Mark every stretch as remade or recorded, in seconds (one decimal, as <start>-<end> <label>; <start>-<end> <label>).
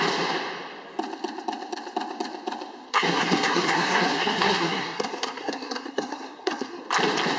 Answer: 0.0-2.9 recorded; 2.9-6.8 remade; 6.8-7.4 recorded